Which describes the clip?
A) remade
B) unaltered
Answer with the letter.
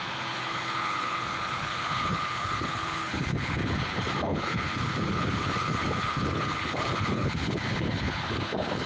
A